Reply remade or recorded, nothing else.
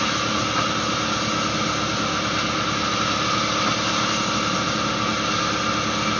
recorded